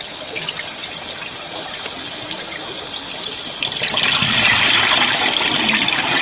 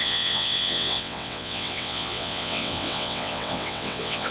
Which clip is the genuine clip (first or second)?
first